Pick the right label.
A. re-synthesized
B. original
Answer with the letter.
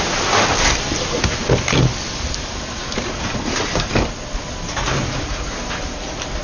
B